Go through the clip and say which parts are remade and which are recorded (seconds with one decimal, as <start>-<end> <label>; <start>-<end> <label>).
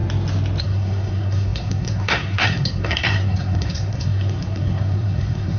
0.0-0.6 recorded; 0.6-5.6 remade